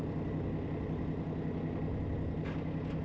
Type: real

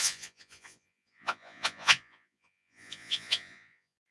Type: fake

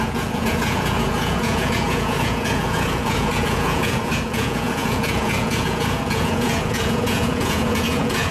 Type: fake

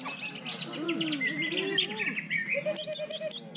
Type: real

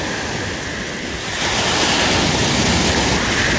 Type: real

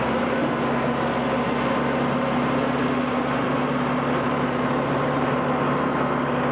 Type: real